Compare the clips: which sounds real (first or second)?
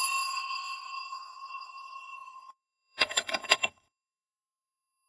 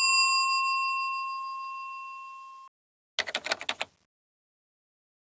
second